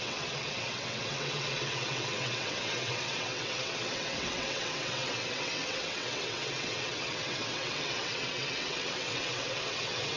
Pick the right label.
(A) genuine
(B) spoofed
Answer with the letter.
B